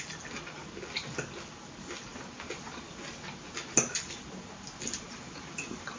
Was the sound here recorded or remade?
recorded